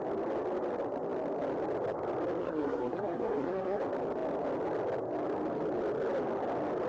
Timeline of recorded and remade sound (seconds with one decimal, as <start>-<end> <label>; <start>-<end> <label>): 0.0-2.4 recorded; 2.4-3.8 remade; 3.8-6.9 recorded